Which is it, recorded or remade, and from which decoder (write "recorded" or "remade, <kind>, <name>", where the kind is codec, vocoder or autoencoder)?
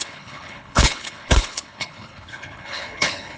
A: remade, codec, HILCodec